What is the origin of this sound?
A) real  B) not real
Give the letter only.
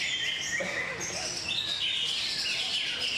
A